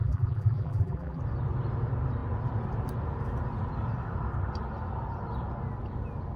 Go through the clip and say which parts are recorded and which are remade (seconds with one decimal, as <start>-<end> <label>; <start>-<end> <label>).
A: 0.0-1.2 remade; 1.2-6.4 recorded